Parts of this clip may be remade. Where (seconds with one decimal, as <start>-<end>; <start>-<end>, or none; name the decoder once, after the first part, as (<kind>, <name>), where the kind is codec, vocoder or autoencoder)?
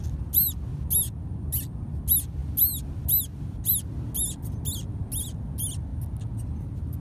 none